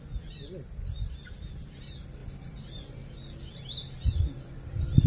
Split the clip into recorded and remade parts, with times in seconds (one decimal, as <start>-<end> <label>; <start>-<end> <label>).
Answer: 0.0-5.1 recorded